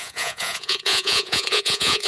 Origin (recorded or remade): remade